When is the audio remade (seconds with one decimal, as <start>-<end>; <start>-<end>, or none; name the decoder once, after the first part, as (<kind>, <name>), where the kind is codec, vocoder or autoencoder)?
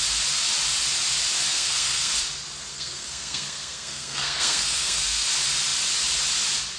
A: 1.5-2.1 (codec, SNAC); 2.7-5.3